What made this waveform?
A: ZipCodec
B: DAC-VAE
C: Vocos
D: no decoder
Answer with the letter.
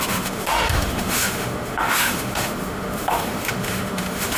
B